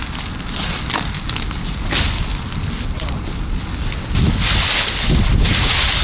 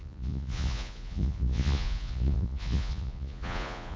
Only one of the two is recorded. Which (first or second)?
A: first